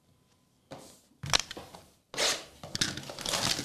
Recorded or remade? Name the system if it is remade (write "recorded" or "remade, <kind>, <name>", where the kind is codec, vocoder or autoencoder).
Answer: recorded